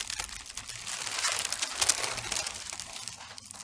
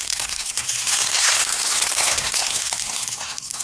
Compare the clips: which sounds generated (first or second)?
second